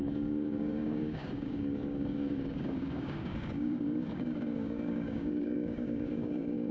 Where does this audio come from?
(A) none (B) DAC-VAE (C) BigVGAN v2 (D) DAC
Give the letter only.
D